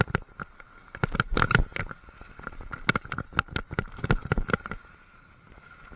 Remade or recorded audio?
recorded